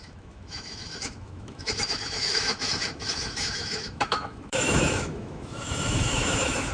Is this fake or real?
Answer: fake